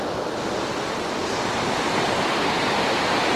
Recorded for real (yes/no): yes